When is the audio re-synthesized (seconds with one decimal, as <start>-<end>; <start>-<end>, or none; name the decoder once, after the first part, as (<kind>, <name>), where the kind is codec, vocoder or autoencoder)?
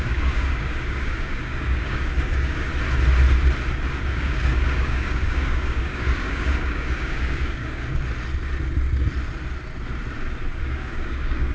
0.0-2.7 (codec, DAC); 4.0-7.8; 10.6-11.5